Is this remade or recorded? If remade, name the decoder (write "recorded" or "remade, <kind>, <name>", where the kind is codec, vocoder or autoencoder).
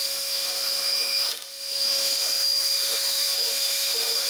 remade, autoencoder, DAC-VAE